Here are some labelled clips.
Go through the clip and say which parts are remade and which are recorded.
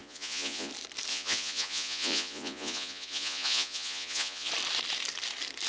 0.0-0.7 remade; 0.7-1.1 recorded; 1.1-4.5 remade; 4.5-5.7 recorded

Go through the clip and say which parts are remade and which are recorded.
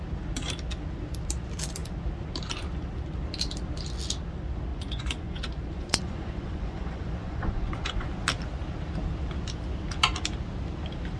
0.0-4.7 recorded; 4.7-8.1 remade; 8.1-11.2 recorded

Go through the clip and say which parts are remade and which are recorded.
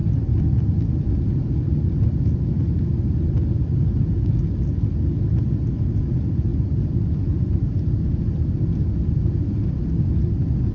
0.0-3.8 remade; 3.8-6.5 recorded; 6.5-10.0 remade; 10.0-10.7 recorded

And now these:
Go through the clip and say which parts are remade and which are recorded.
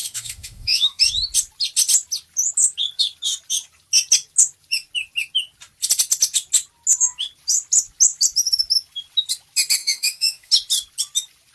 0.0-1.0 remade; 1.0-9.8 recorded; 9.8-10.5 remade; 10.5-11.5 recorded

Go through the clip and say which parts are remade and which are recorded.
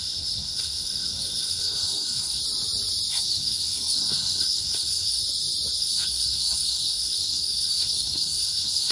0.0-2.4 remade; 2.4-3.1 recorded; 3.1-5.2 remade; 5.2-5.8 recorded; 5.8-8.9 remade